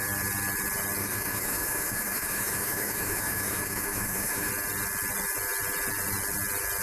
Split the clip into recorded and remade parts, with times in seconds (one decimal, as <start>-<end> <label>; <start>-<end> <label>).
0.0-1.0 recorded; 1.0-4.5 remade; 4.5-6.8 recorded